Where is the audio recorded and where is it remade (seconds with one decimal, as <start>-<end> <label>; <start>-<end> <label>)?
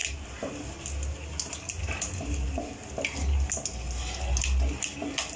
0.0-5.4 recorded